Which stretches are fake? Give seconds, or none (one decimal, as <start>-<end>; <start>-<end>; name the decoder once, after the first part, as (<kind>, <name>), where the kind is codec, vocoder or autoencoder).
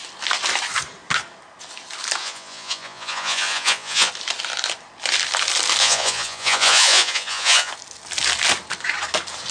2.2-4.1 (vocoder, Vocos); 5.8-7.7